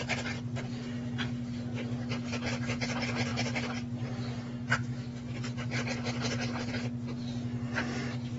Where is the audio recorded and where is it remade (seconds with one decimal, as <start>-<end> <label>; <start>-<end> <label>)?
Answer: 0.0-8.4 recorded